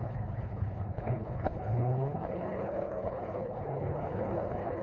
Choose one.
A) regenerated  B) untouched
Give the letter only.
A